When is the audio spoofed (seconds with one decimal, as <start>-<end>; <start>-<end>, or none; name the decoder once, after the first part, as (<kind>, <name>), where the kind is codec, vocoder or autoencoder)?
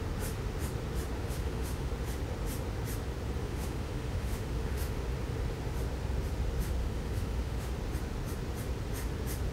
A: 1.2-1.9 (autoencoder, DAC-VAE); 3.4-5.0; 6.8-7.7